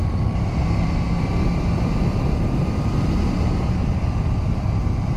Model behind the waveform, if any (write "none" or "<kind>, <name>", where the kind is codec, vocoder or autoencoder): none